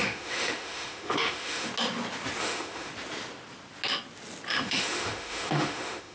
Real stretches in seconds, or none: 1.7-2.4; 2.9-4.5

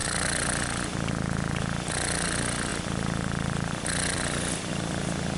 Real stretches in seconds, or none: 0.0-5.4

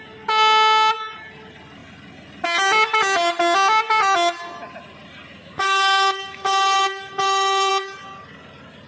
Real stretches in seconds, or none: 0.0-5.4; 7.7-8.9

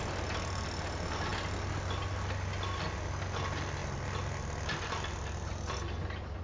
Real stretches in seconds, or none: 0.0-6.4

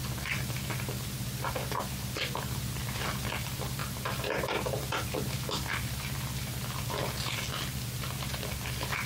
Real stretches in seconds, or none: 0.0-9.1